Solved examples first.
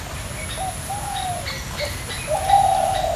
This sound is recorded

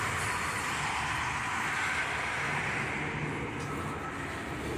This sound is recorded